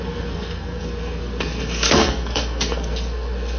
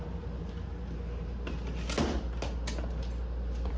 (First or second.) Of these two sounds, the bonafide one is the second